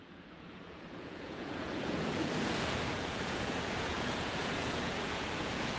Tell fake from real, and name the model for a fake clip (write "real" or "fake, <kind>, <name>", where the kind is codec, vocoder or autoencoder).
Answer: fake, vocoder, Vocos